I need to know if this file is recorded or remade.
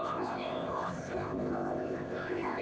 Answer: remade